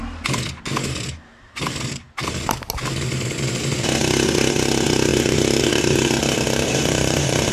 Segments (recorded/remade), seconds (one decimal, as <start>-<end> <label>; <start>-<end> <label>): 0.0-5.1 recorded; 5.1-7.5 remade